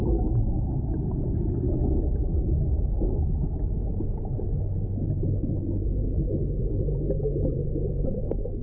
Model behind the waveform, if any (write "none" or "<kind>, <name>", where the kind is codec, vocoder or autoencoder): none